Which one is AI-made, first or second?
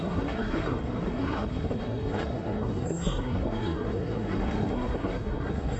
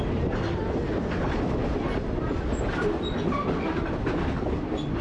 first